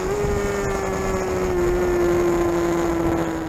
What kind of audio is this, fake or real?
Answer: real